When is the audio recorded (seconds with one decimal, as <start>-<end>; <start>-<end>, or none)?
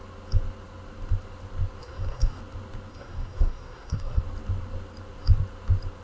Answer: 0.0-1.8; 2.4-2.9; 4.2-6.0